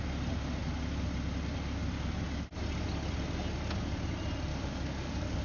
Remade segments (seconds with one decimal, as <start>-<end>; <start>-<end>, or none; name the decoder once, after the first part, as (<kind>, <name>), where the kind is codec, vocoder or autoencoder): 4.5-5.4 (codec, DAC)